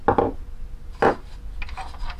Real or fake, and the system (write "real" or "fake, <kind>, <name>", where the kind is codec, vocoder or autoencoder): real